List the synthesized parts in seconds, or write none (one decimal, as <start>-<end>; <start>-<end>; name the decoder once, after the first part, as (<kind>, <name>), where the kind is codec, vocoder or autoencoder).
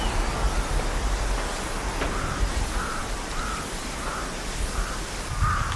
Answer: none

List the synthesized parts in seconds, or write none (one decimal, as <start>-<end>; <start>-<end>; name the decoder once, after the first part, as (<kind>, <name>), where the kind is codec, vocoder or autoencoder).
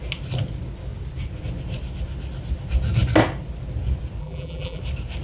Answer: 4.2-4.8 (vocoder, BigVGAN v2)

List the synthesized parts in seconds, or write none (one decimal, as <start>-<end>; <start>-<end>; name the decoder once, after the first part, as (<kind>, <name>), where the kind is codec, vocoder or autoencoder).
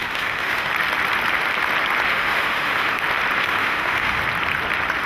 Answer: 0.0-0.7 (autoencoder, DAC-VAE); 2.1-3.0; 3.4-4.2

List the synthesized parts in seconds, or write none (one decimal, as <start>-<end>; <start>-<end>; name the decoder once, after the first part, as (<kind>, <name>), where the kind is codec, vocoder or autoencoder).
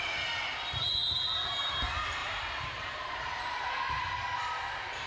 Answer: 2.2-3.4 (vocoder, BigVGAN v2)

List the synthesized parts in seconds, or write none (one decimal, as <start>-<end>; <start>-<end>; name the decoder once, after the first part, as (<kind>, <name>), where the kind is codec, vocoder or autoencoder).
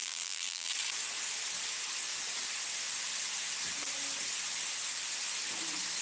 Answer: 0.0-0.7 (vocoder, BigVGAN v2)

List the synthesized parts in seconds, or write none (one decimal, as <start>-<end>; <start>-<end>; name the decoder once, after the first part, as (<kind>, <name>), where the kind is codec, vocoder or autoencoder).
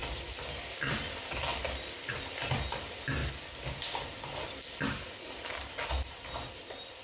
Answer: 0.6-1.5 (vocoder, BigVGAN v2); 2.7-3.2; 3.8-7.0